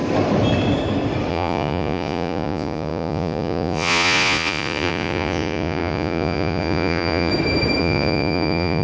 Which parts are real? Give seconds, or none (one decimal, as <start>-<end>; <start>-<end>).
0.0-1.3; 7.3-7.8